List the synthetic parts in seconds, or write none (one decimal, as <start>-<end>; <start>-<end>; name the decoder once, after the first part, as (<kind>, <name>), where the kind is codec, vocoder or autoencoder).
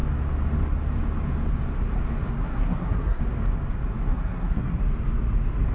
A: 2.4-3.2 (codec, SNAC); 4.1-4.8